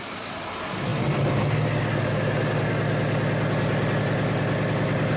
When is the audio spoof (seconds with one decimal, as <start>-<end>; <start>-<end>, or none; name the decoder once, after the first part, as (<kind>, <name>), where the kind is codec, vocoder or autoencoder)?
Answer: none